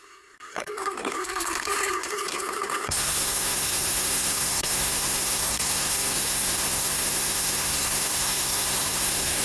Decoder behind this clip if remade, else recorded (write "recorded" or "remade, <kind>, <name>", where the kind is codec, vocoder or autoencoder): remade, codec, SNAC